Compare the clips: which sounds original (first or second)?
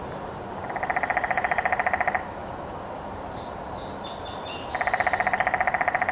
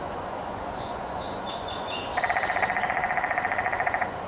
first